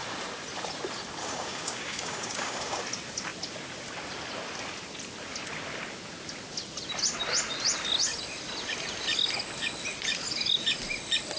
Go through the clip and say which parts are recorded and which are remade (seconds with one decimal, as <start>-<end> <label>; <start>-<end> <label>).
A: 0.0-1.2 recorded; 1.2-2.8 remade; 2.8-11.4 recorded